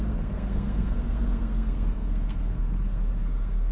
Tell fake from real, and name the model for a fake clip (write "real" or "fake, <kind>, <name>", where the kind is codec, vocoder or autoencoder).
fake, codec, SNAC